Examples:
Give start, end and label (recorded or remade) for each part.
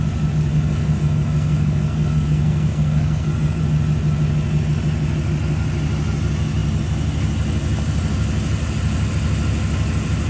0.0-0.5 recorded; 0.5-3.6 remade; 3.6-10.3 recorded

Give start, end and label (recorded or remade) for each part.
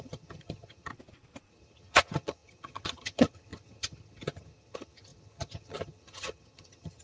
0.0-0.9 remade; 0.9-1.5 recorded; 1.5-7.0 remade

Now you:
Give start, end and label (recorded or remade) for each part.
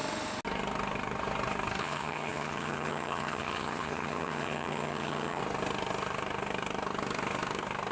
0.0-1.8 recorded; 1.8-5.4 remade; 5.4-7.9 recorded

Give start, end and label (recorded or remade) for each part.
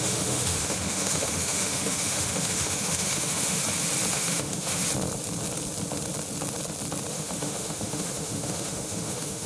0.0-3.6 remade; 3.6-4.1 recorded; 4.1-4.8 remade; 4.8-7.1 recorded; 7.1-9.5 remade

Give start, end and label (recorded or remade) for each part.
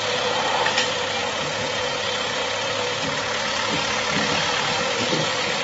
0.0-1.2 recorded; 1.2-1.9 remade; 1.9-5.6 recorded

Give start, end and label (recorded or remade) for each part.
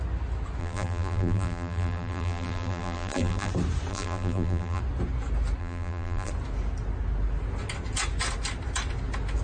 0.0-0.6 recorded; 0.6-3.5 remade; 3.5-3.9 recorded; 3.9-4.8 remade; 4.8-5.6 recorded; 5.6-6.3 remade; 6.3-9.4 recorded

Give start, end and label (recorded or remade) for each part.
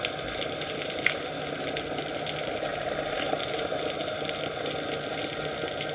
0.0-5.9 recorded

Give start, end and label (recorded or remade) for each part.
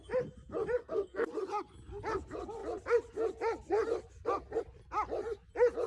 0.0-0.8 recorded; 0.8-1.3 remade; 1.3-5.9 recorded